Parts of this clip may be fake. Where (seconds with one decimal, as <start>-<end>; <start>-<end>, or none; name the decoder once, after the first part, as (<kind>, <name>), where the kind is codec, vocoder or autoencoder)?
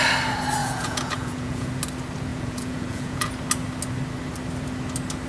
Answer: 0.6-1.7 (vocoder, Vocos); 2.3-3.3